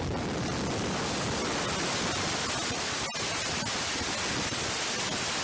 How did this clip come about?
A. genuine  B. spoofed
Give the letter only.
A